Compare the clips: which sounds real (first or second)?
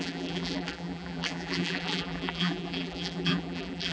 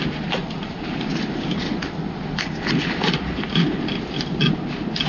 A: second